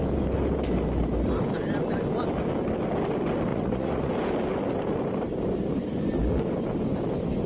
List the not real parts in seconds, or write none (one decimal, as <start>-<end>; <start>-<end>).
3.5-4.1